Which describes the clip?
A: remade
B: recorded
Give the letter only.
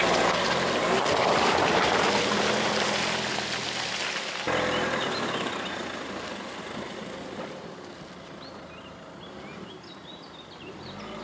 B